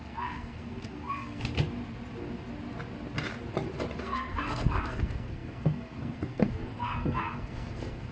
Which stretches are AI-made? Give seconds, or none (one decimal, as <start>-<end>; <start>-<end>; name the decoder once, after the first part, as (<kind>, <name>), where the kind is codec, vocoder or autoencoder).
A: 0.0-1.4 (codec, SNAC); 4.0-8.1